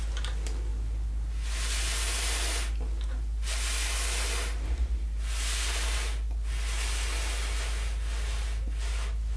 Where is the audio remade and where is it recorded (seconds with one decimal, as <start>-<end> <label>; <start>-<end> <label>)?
0.0-9.4 recorded